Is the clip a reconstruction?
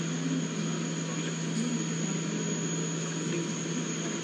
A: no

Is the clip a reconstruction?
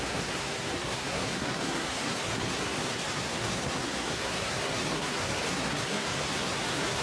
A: yes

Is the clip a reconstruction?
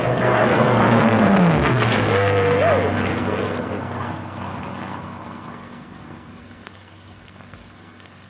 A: yes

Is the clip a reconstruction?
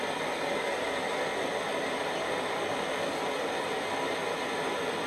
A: no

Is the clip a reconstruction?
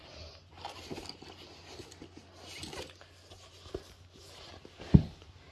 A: no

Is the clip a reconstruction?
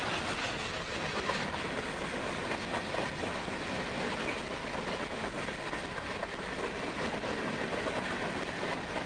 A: no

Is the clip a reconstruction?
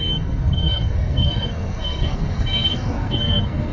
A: yes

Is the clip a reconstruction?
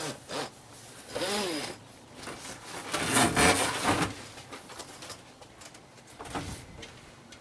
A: no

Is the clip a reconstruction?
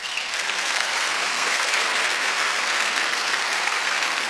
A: yes